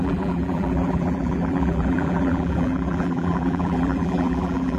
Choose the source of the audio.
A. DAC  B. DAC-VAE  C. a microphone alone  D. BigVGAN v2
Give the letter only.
D